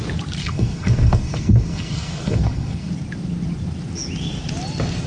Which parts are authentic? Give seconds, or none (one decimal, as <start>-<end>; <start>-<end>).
0.0-0.4; 2.9-5.1